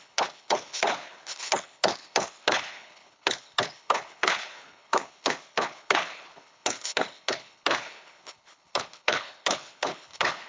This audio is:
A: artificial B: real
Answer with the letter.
A